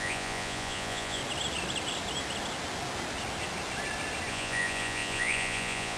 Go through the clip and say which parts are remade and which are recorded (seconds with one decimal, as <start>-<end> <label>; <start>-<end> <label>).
0.0-1.2 remade; 1.2-4.3 recorded; 4.3-6.0 remade